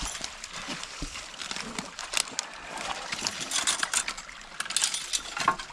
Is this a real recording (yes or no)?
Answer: yes